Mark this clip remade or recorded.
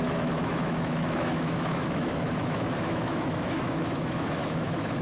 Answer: remade